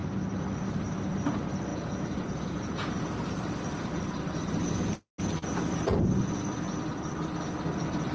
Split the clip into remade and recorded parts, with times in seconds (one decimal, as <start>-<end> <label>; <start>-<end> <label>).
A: 0.0-1.7 recorded; 1.7-2.9 remade; 2.9-8.1 recorded